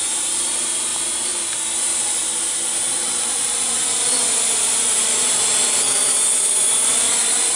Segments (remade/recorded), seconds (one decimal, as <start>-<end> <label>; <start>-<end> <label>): 0.0-7.6 recorded